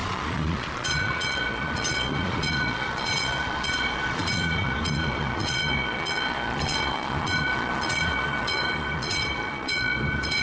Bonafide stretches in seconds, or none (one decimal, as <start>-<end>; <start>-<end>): none